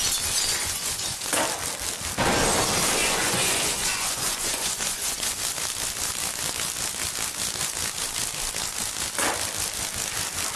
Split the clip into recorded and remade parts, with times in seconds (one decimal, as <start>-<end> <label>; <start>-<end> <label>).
0.0-0.5 recorded; 0.5-1.3 remade; 1.3-3.0 recorded; 3.0-5.4 remade; 5.4-10.6 recorded